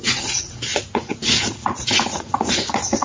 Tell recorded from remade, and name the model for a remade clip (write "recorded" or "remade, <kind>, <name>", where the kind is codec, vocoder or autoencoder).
remade, vocoder, Vocos